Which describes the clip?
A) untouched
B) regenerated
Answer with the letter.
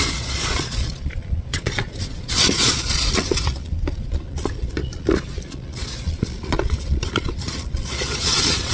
B